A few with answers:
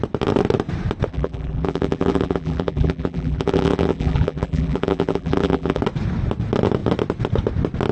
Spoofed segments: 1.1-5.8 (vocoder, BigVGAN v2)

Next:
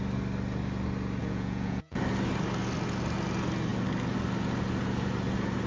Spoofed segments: 1.2-2.0 (vocoder, Vocos)

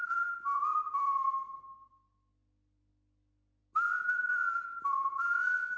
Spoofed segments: none

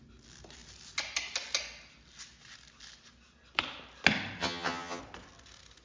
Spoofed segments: 4.4-5.0 (vocoder, HiFi-GAN)

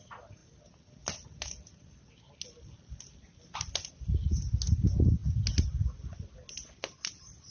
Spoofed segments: none

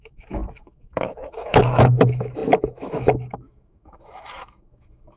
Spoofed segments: 0.0-5.2 (autoencoder, DAC-VAE)

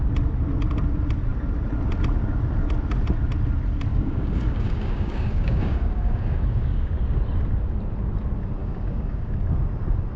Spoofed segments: 3.9-6.9 (codec, DAC); 8.6-9.5

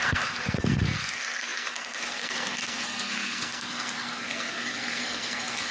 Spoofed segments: 0.0-5.7 (codec, SNAC)